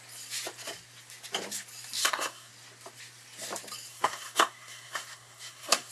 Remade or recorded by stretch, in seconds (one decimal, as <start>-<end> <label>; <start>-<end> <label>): 0.0-2.0 recorded; 2.0-2.5 remade; 2.5-3.9 recorded; 3.9-5.9 remade